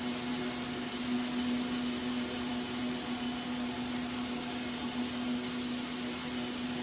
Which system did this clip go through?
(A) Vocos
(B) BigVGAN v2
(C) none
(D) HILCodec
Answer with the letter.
C